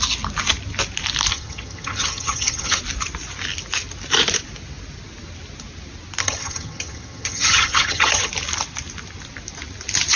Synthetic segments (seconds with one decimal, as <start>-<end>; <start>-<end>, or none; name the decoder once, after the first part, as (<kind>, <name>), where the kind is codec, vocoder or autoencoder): 1.3-2.8 (vocoder, HiFi-GAN); 6.2-8.3